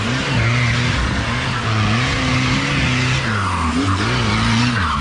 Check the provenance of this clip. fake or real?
real